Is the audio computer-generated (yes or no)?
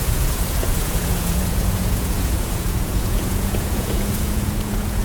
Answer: yes